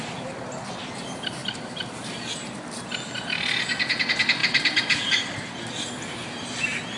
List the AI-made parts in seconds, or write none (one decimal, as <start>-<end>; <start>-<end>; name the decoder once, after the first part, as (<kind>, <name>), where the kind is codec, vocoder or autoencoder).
1.4-2.3 (vocoder, BigVGAN v2); 4.4-5.5